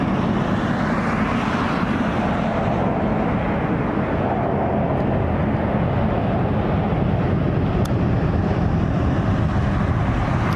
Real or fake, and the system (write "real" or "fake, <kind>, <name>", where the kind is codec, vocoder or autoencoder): real